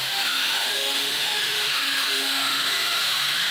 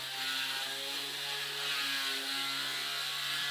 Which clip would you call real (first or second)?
second